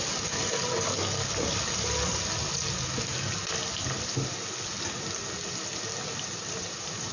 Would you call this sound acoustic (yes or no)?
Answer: yes